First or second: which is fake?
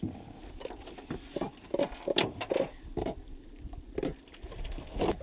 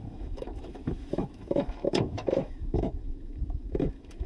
second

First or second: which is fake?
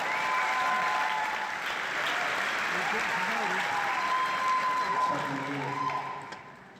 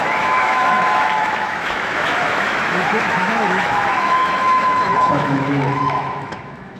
second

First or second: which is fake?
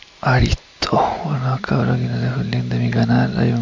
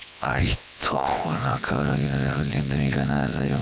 second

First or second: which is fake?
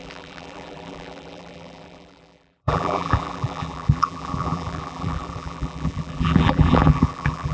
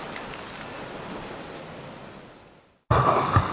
first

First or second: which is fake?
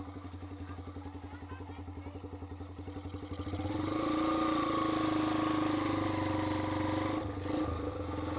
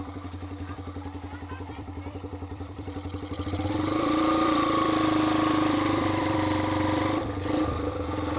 second